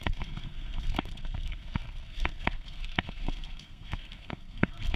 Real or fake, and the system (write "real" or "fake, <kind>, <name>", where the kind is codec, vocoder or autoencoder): fake, codec, SNAC